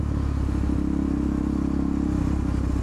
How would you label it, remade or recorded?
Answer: recorded